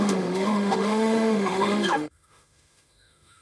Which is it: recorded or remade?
remade